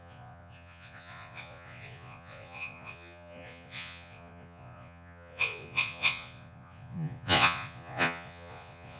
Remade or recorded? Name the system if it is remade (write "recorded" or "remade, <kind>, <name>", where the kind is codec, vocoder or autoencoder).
remade, vocoder, Vocos